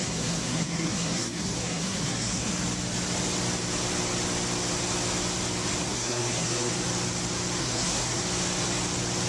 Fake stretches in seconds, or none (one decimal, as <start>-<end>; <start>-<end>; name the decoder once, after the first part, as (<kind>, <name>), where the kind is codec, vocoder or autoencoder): 0.0-2.5 (codec, SNAC); 5.9-6.7; 7.6-8.2